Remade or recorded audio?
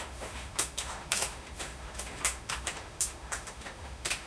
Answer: remade